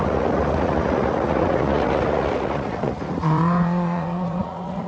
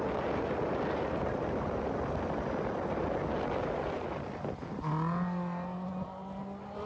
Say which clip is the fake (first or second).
first